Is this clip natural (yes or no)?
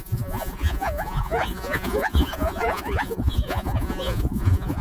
no